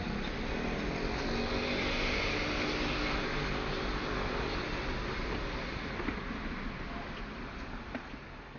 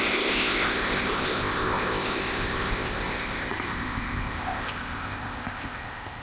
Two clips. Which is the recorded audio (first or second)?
first